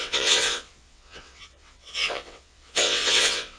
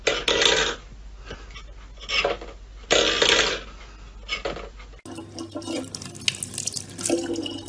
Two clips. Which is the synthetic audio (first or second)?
first